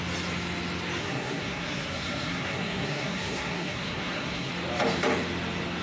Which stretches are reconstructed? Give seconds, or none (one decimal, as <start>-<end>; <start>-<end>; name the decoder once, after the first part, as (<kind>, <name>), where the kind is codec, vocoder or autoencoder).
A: 1.0-4.5 (codec, SNAC)